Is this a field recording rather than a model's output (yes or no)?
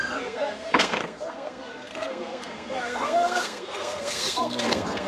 no